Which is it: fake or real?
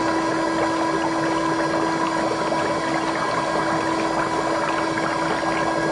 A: real